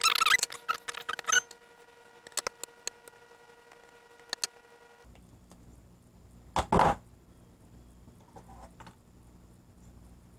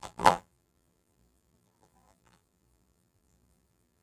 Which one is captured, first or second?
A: first